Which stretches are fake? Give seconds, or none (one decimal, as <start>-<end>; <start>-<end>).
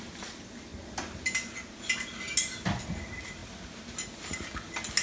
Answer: none